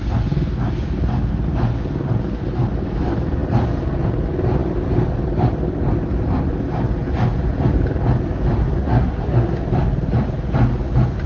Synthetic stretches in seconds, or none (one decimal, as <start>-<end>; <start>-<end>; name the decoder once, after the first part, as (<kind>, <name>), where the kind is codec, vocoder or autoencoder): 8.6-9.6 (codec, SNAC)

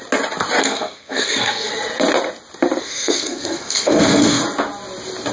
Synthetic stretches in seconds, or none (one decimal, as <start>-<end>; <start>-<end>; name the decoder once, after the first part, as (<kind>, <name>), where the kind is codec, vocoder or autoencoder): 0.6-1.7 (codec, SNAC); 2.8-4.4

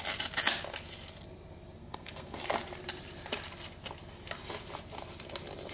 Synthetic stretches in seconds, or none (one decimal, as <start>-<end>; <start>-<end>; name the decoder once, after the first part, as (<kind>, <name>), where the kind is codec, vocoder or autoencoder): 1.8-2.4 (codec, SNAC)

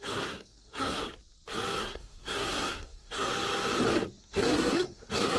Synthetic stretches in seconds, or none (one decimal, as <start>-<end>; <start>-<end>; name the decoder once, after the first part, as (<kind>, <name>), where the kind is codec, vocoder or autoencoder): 0.0-1.0 (codec, SNAC); 1.8-3.3; 4.2-5.4

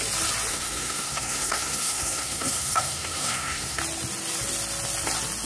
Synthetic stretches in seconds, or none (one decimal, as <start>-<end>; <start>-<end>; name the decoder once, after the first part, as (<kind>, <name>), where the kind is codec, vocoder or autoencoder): 0.5-3.8 (codec, SNAC)

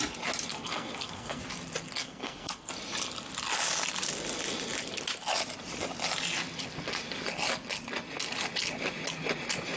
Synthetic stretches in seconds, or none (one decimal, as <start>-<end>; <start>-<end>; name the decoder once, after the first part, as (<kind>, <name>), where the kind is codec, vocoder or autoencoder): 0.5-1.4 (codec, SNAC); 2.0-2.7

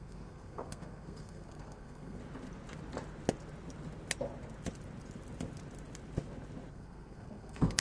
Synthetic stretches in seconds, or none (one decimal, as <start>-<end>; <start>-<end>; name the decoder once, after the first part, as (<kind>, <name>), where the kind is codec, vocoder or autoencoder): 0.0-2.2 (codec, SNAC); 6.7-7.8

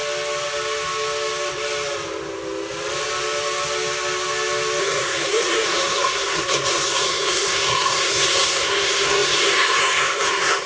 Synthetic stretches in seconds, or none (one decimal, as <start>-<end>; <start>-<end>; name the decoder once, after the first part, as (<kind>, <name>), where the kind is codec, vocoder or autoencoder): 4.8-10.7 (codec, SNAC)